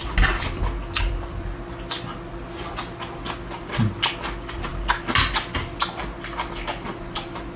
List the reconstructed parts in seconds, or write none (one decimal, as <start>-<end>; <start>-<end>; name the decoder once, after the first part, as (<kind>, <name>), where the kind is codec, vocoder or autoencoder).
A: none

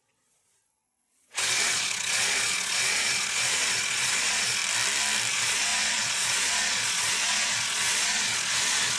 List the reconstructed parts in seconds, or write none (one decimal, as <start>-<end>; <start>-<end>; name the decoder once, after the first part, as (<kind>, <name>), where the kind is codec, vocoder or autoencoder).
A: 0.0-4.6 (vocoder, Vocos); 5.3-9.0

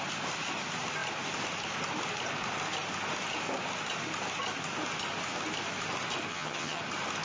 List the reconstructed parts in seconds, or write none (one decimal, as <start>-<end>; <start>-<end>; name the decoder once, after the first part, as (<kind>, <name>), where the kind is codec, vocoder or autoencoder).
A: 6.3-6.8 (vocoder, HiFi-GAN)

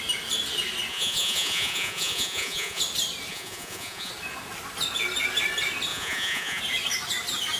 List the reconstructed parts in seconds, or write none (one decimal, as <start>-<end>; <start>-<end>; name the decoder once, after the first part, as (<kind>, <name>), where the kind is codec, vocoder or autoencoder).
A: 0.9-2.8 (vocoder, Vocos); 3.3-4.1; 5.9-6.6

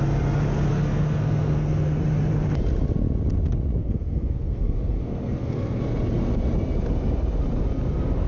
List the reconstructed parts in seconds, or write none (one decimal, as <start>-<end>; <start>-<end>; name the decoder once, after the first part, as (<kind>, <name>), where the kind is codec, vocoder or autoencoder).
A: 0.7-2.0 (codec, SNAC); 3.8-5.8

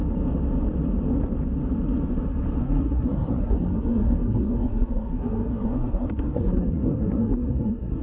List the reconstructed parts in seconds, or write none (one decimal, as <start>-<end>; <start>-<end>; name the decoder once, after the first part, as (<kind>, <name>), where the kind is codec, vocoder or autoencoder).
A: 2.6-8.0 (codec, SNAC)

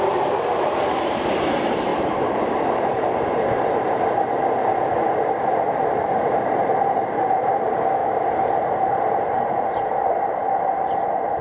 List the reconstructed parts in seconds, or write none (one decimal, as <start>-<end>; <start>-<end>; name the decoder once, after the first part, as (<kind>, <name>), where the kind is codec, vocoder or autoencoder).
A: 0.0-4.7 (vocoder, BigVGAN v2); 5.9-11.4

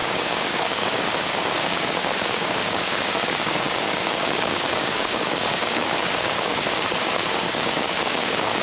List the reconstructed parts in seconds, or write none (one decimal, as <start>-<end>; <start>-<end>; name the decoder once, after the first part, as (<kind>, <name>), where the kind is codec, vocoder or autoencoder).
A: 0.0-8.6 (codec, DAC)